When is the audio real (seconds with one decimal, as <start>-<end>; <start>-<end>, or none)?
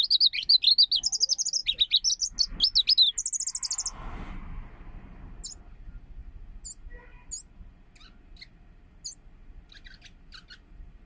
0.0-11.1